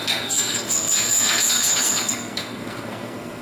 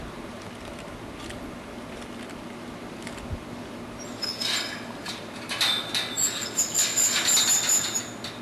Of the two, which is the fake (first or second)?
first